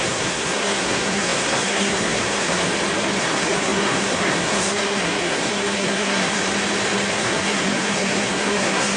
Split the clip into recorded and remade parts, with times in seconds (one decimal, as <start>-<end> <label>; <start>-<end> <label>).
0.0-2.7 remade; 2.7-3.2 recorded; 3.2-6.4 remade; 6.4-7.1 recorded; 7.1-9.0 remade